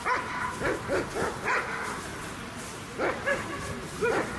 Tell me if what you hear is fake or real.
real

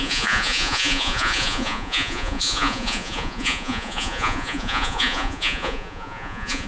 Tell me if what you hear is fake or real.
fake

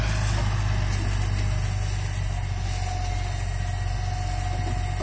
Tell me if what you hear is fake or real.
real